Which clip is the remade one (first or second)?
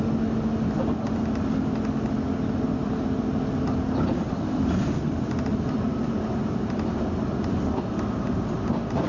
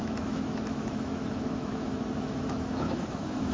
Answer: second